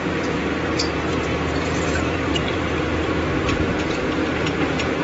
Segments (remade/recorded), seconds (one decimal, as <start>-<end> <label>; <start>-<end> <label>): 0.0-5.0 remade